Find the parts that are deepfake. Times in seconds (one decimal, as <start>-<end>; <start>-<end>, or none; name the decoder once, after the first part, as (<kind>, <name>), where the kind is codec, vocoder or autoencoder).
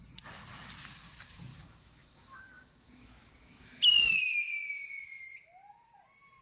1.5-4.5 (autoencoder, DAC-VAE)